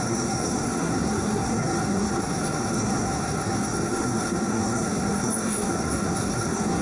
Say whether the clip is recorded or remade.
remade